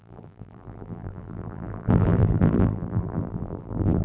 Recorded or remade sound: remade